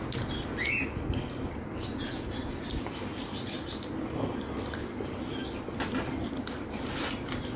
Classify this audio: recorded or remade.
recorded